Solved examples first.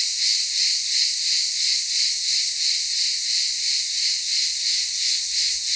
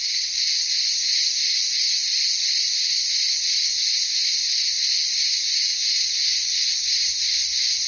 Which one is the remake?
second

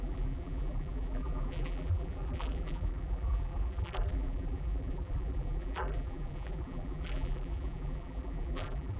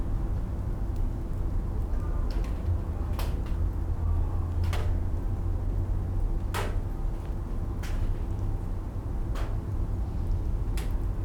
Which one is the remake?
first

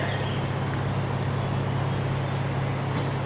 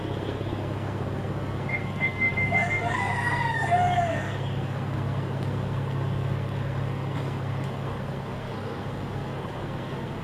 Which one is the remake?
second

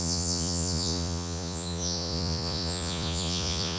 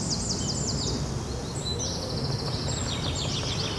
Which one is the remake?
first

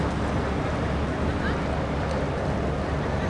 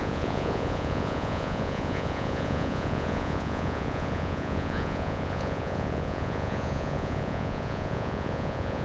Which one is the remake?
second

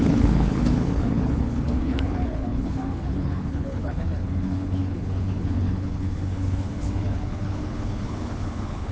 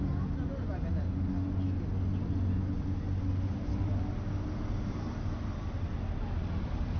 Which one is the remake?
first